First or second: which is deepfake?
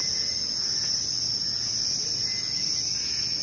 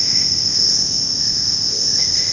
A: second